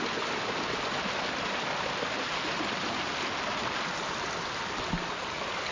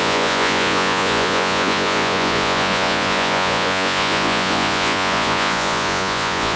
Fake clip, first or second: second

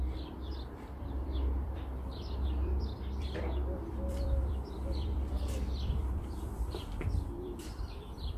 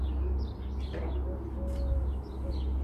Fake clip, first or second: first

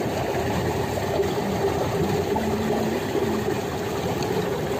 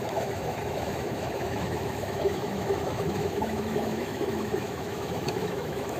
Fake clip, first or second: second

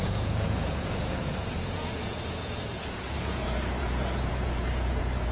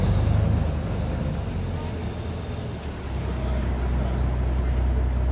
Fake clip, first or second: first